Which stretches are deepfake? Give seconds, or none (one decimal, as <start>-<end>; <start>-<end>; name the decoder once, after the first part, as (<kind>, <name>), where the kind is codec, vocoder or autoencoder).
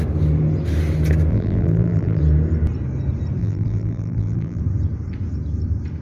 1.3-2.2 (vocoder, BigVGAN v2); 3.4-4.6